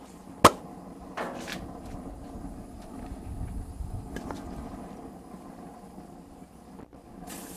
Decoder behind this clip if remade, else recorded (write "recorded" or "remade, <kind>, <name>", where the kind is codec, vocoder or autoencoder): recorded